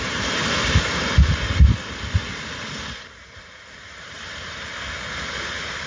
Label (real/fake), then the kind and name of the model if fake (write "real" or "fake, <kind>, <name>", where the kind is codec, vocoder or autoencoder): fake, vocoder, BigVGAN v2